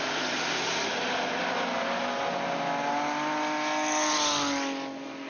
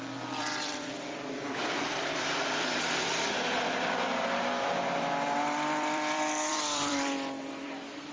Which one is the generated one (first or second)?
second